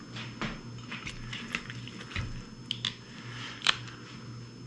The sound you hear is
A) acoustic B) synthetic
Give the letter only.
A